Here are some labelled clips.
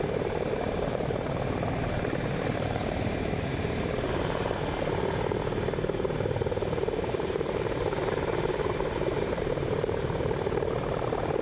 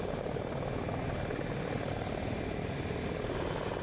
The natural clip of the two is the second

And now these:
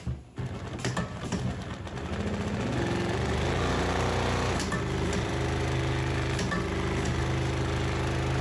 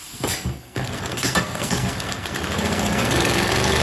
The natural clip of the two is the first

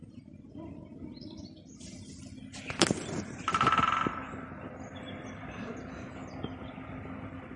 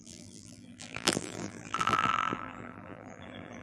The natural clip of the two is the first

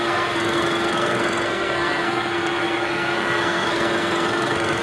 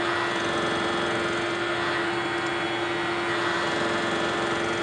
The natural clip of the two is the second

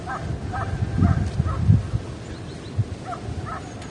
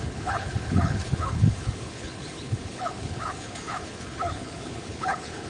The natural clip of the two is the first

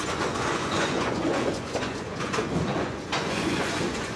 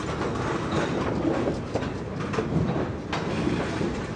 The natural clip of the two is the second